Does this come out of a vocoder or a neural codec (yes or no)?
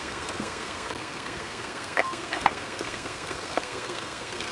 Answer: yes